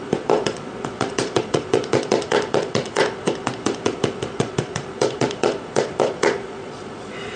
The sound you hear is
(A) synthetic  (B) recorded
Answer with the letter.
A